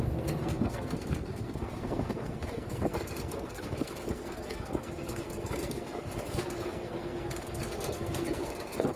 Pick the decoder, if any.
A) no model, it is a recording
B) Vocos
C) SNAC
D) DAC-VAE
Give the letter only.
C